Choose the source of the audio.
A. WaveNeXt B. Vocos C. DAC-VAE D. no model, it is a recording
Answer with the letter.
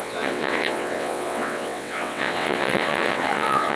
A